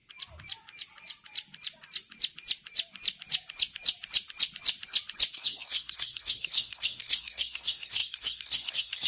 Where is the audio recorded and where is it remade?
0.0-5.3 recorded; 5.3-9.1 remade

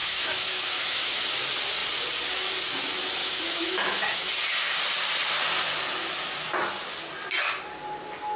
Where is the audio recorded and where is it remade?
0.0-1.4 remade; 1.4-3.2 recorded; 3.2-4.3 remade; 4.3-8.4 recorded

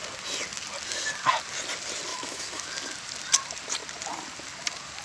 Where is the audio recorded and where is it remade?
0.0-2.1 recorded; 2.1-2.7 remade; 2.7-5.0 recorded

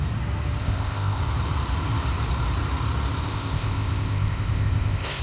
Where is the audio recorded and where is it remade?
0.0-0.6 recorded; 0.6-1.2 remade; 1.2-3.2 recorded; 3.2-5.2 remade

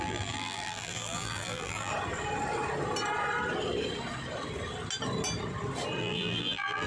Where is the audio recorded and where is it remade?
0.0-1.9 remade; 1.9-6.0 recorded; 6.0-6.9 remade